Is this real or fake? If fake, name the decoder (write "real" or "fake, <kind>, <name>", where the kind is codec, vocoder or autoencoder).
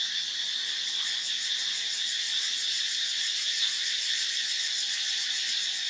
real